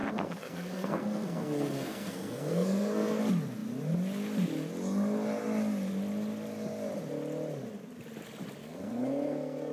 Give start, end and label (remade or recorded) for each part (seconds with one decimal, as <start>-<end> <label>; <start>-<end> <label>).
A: 0.0-3.2 remade; 3.2-8.6 recorded; 8.6-9.7 remade